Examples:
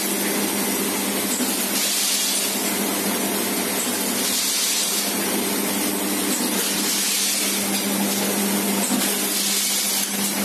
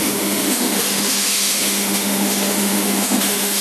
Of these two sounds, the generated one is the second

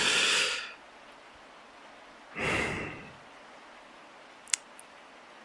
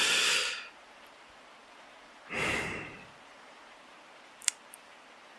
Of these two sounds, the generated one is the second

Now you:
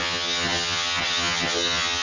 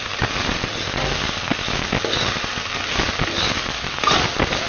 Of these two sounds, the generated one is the first